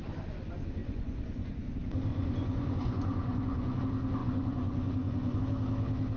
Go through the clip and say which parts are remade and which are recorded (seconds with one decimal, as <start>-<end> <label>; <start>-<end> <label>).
0.0-0.8 recorded; 0.8-1.7 remade; 1.7-2.1 recorded; 2.1-3.8 remade; 3.8-4.2 recorded; 4.2-5.4 remade; 5.4-6.2 recorded